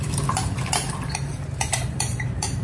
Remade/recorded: remade